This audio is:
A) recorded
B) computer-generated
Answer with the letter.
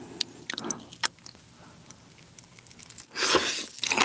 A